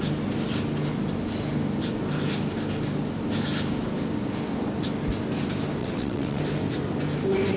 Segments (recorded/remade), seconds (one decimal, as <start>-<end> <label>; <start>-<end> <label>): 0.0-5.8 recorded; 5.8-6.4 remade; 6.4-7.6 recorded